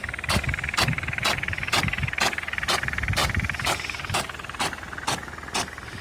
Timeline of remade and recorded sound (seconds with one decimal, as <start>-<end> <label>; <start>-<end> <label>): 0.0-0.8 remade; 0.8-3.2 recorded; 3.2-4.6 remade; 4.6-6.0 recorded